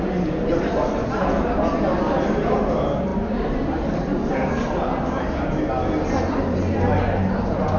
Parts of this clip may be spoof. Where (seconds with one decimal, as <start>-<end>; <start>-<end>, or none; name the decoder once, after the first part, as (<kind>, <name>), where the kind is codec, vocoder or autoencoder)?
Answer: none